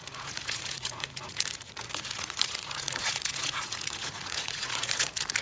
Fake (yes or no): yes